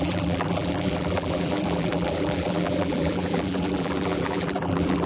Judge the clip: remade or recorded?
remade